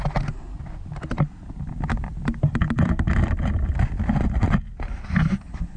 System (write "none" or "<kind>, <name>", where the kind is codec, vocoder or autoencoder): none